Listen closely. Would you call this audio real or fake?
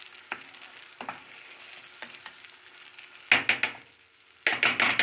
real